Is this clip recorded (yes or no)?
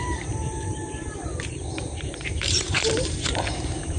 no